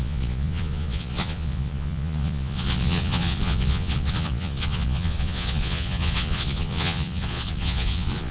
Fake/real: fake